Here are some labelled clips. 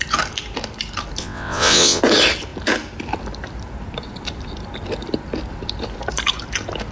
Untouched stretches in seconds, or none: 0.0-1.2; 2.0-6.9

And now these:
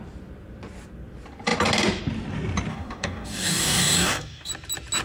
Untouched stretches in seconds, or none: 0.0-2.7; 4.5-5.0

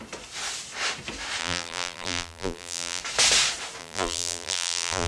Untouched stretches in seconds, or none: 0.0-1.4; 3.0-3.8